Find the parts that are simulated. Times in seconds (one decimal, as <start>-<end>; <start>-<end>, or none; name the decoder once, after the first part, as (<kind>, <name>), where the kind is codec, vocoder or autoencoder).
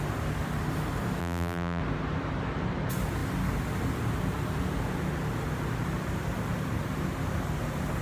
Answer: 1.2-1.8 (vocoder, BigVGAN v2)